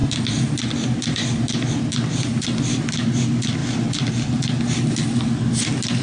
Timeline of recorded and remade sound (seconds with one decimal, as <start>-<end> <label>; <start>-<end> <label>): 0.0-6.0 recorded